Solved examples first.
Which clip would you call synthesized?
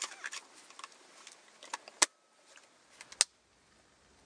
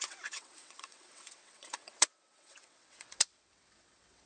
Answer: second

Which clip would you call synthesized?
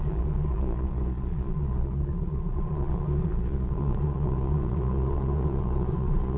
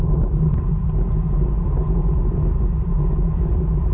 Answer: first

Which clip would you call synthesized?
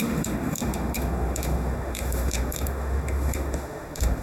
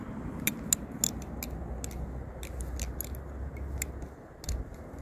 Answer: first